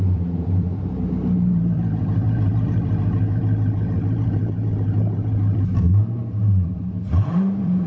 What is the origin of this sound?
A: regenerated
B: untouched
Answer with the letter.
A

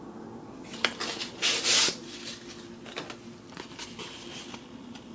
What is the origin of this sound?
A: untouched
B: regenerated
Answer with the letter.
A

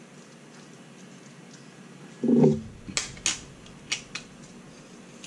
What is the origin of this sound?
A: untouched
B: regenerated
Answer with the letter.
A